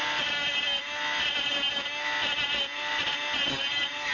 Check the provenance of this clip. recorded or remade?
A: recorded